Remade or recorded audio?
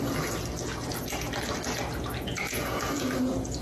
recorded